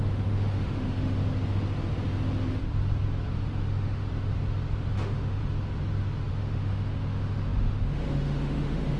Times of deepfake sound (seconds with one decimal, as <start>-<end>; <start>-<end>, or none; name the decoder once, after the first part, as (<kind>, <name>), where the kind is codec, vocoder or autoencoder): 0.0-1.3 (autoencoder, DAC-VAE); 3.3-4.1; 4.9-5.4; 6.3-9.0